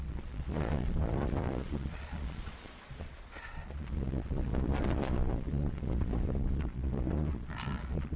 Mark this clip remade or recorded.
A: remade